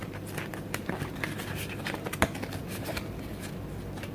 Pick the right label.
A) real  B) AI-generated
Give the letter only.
B